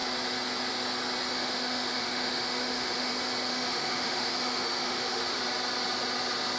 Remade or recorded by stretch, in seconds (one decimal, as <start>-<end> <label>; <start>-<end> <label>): 0.0-1.3 recorded; 1.3-3.1 remade; 3.1-3.5 recorded; 3.5-5.4 remade; 5.4-6.6 recorded